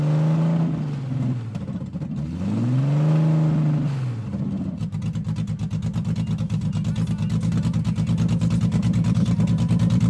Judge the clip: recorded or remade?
recorded